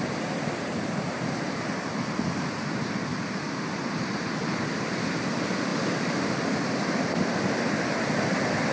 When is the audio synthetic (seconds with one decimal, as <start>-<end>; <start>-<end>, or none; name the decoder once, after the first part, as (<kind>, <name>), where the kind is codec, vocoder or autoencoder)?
none